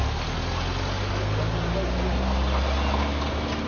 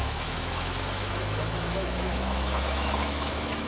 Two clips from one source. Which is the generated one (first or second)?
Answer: second